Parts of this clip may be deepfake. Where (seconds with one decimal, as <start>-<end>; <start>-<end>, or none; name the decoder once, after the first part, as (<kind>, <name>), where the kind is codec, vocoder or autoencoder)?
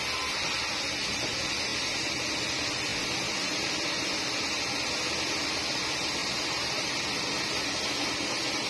6.2-7.0 (vocoder, BigVGAN v2)